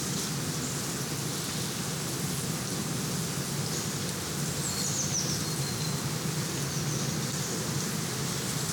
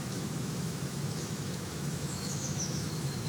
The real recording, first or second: first